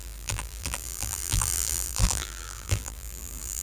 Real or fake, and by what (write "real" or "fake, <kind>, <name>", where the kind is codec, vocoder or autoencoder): fake, vocoder, BigVGAN v2